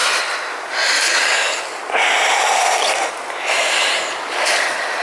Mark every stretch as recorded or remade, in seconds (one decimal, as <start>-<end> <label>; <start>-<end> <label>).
0.0-5.0 recorded